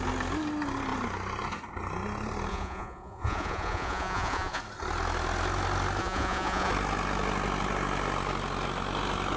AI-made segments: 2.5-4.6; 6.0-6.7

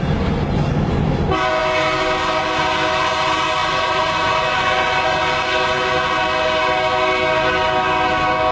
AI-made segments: 3.6-5.2

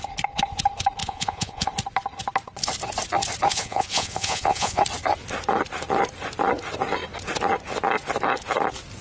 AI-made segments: 1.0-1.7; 3.5-4.8

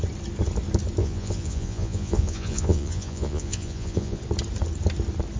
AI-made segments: 1.0-4.2

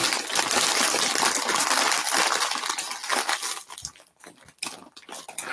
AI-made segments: none

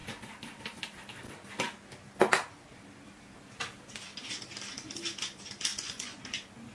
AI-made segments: 5.7-6.2

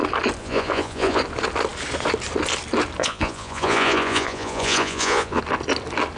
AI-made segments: 0.4-1.2; 3.0-5.4